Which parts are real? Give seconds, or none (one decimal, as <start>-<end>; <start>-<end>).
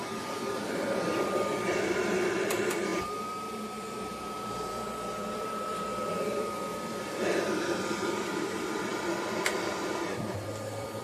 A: none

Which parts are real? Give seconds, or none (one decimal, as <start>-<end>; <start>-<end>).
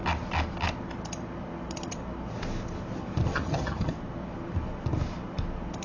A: 0.0-3.3; 3.9-5.8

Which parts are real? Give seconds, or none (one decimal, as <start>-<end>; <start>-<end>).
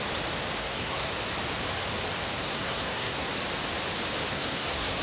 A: 0.0-0.6; 1.1-2.4; 3.3-4.3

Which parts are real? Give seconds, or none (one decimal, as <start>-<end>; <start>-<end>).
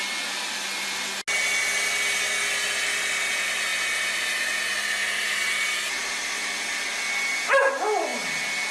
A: 0.0-8.7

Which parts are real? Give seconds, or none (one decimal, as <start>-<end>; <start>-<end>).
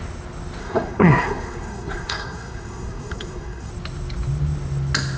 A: 0.0-0.6; 3.7-5.2